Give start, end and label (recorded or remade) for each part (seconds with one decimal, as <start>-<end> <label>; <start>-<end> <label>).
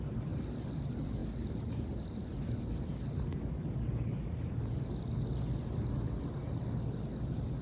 0.0-7.6 recorded